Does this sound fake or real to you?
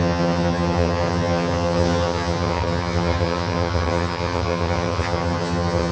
fake